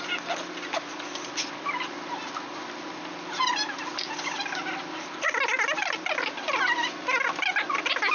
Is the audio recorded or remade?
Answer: recorded